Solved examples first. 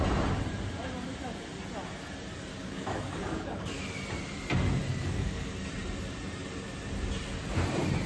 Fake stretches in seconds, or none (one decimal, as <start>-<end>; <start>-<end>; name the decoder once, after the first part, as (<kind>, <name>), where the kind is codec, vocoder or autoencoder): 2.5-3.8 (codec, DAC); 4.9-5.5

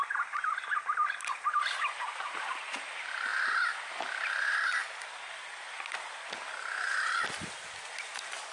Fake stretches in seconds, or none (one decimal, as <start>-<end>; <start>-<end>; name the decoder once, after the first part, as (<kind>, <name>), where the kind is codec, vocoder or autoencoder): none

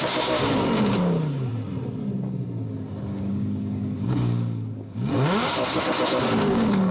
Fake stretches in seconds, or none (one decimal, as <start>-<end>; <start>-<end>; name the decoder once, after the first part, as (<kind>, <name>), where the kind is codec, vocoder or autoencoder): 0.0-1.5 (codec, DAC); 3.1-6.9

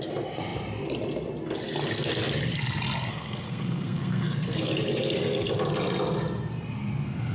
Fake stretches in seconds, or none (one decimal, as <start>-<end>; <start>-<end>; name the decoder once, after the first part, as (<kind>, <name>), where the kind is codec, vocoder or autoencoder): 3.1-4.7 (codec, SNAC)